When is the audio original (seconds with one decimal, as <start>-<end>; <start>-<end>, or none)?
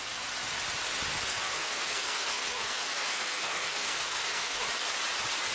0.0-1.3; 4.6-5.5